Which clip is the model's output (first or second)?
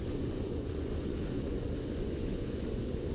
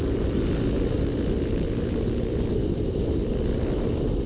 first